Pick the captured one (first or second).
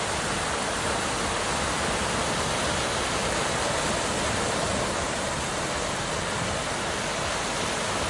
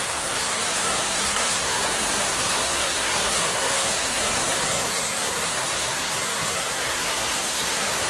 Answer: first